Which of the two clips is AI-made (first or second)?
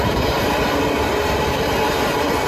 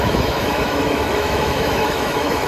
second